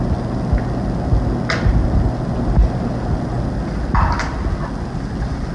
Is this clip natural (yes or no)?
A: yes